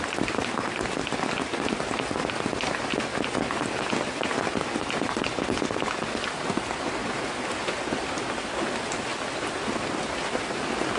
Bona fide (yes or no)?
yes